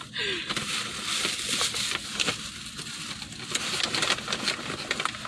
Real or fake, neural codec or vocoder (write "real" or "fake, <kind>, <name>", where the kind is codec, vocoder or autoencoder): real